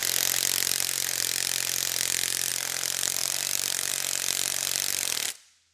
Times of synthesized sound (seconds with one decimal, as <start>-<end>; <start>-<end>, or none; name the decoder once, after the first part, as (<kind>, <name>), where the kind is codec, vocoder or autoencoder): 2.5-5.7 (vocoder, BigVGAN v2)